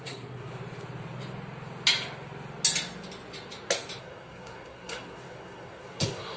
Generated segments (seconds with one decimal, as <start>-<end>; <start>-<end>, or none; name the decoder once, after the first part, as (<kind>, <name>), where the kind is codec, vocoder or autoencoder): 0.0-0.5 (codec, SNAC); 4.0-6.4